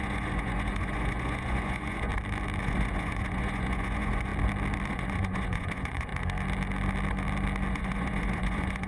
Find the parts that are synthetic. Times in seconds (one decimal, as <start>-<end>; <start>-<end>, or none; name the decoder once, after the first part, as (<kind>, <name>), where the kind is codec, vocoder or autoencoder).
0.0-2.1 (vocoder, Vocos); 2.6-4.3; 4.9-6.1; 7.7-8.9